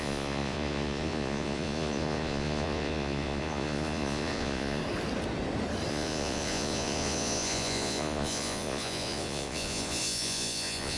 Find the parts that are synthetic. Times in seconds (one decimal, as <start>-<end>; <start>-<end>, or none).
0.0-4.8; 5.9-11.0